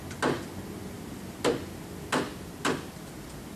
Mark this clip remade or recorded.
recorded